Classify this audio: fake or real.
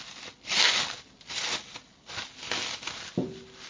real